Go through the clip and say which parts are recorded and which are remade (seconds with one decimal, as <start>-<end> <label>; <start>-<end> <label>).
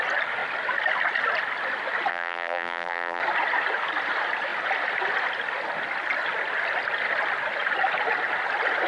0.0-2.1 recorded; 2.1-3.2 remade; 3.2-8.9 recorded